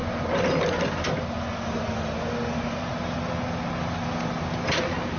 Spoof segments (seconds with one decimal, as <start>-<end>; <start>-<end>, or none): none